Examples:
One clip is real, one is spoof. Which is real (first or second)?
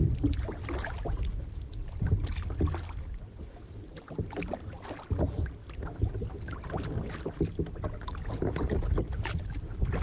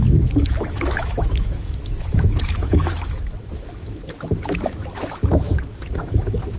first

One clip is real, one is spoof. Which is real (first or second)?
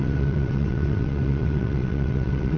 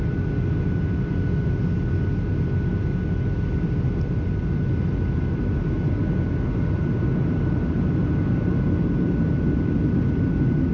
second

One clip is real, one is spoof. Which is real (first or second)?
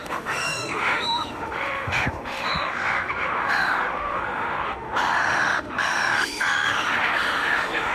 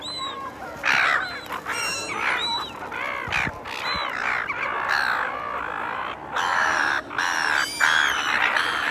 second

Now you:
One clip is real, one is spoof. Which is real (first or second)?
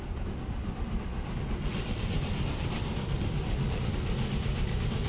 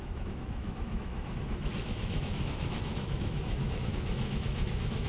first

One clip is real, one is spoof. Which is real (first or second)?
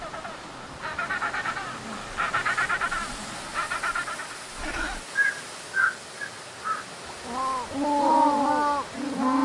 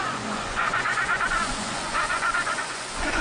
first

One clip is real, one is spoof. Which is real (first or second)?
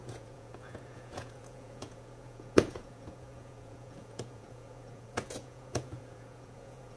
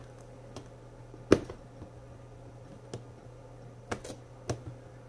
second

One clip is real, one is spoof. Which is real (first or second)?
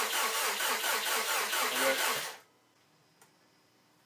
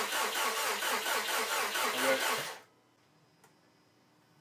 second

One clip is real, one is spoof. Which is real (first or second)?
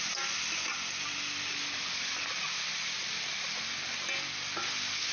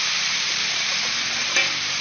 first